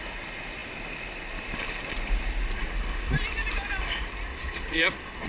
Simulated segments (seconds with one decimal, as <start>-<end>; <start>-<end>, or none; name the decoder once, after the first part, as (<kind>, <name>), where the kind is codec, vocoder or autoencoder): 4.3-5.3 (vocoder, Vocos)